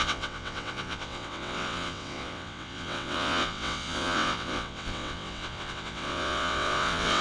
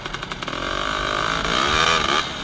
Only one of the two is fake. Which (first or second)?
first